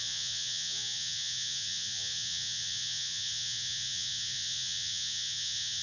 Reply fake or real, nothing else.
fake